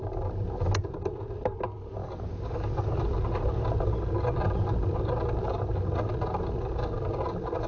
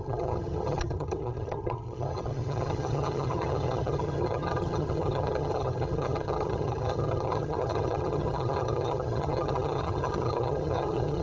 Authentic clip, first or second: first